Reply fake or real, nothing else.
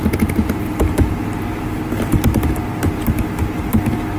real